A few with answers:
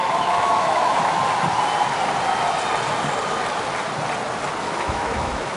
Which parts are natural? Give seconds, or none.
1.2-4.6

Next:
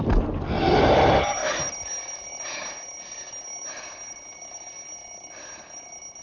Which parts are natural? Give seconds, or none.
0.0-6.2

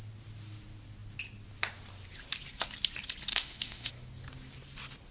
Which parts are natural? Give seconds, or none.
0.0-3.3; 3.9-5.1

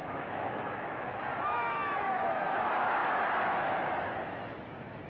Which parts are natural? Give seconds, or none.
1.3-2.0

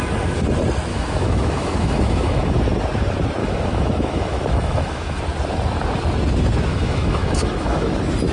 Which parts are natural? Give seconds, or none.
0.0-0.9; 2.6-3.4; 5.2-6.7; 7.9-8.3

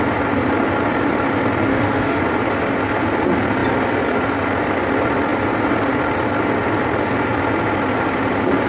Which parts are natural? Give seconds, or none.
0.0-1.7; 2.2-8.7